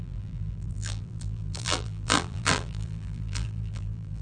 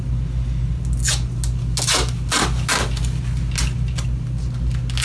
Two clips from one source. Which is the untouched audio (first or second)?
second